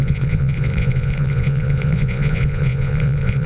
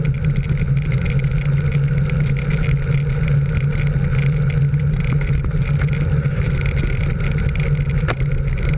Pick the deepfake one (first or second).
first